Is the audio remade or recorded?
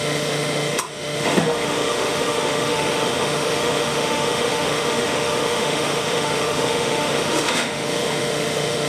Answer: remade